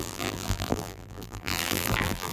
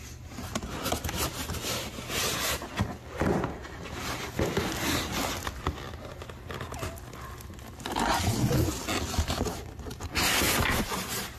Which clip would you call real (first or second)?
second